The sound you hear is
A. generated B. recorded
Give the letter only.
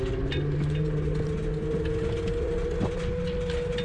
B